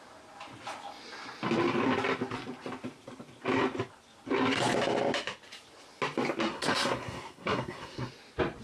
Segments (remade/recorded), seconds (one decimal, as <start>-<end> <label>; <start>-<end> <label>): 0.0-6.5 recorded; 6.5-8.1 remade; 8.1-8.6 recorded